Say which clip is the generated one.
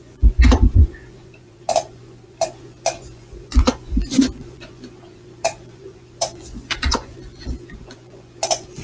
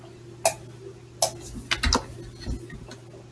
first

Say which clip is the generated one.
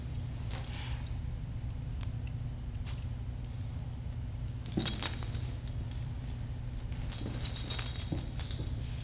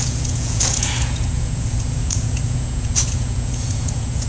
second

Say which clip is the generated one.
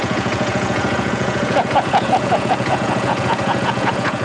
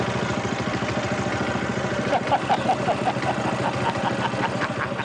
first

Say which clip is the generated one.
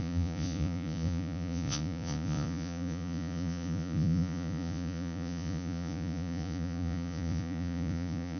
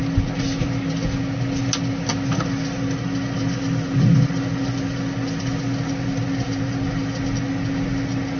first